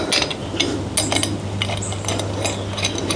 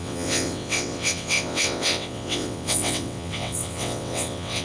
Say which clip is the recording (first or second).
first